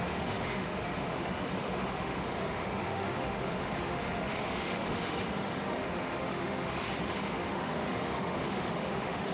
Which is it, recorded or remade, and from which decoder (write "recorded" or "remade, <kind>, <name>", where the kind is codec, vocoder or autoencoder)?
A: remade, autoencoder, DAC-VAE